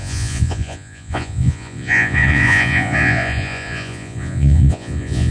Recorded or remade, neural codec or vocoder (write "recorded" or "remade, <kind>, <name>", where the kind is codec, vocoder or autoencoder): remade, vocoder, Vocos